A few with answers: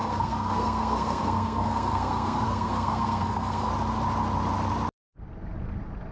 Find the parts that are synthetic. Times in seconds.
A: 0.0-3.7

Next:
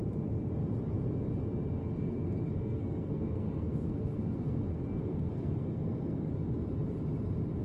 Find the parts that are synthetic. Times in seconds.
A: 1.8-6.3